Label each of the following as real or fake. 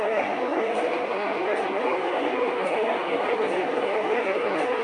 fake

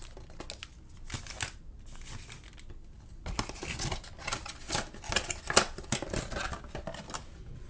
real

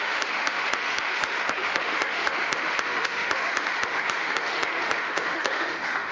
fake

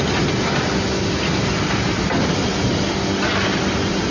real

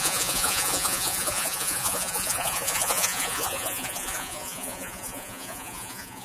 fake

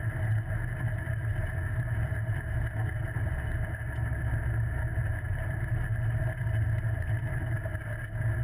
real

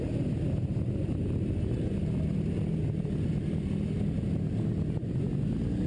real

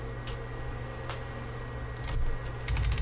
real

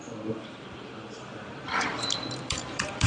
fake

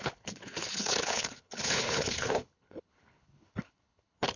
fake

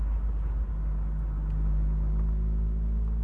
real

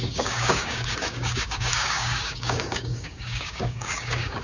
fake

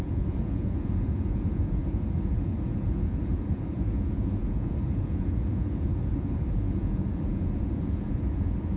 fake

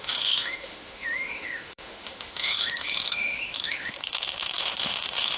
fake